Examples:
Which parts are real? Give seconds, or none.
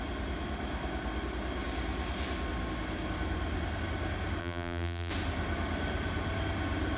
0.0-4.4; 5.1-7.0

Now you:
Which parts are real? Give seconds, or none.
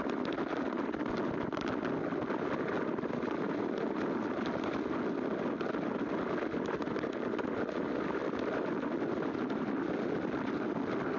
0.0-8.2; 9.0-11.2